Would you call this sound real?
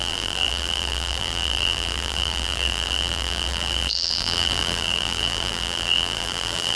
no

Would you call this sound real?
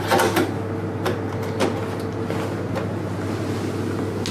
yes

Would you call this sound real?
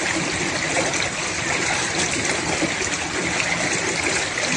yes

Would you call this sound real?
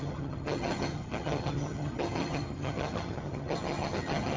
no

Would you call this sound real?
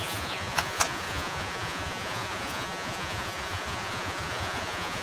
no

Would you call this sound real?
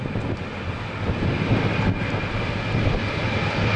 yes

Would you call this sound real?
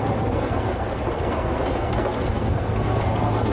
no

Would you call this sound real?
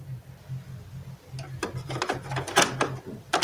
yes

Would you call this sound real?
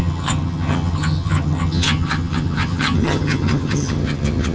no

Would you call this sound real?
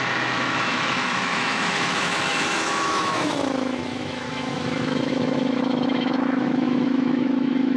no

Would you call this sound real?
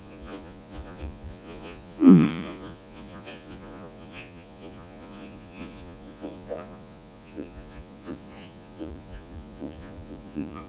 no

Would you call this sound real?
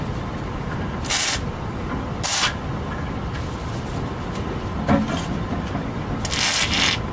yes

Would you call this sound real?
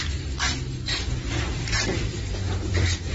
no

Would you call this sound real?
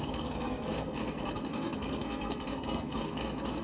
no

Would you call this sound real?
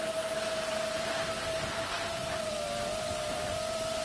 yes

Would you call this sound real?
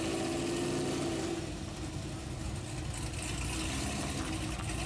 yes